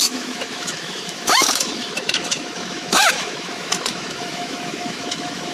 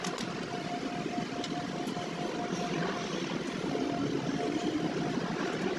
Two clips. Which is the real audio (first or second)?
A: second